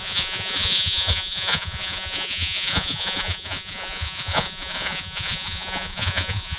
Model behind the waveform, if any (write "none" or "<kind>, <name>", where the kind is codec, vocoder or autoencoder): vocoder, Vocos